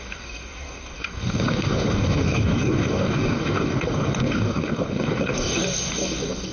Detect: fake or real fake